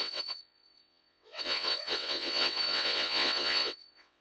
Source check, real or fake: fake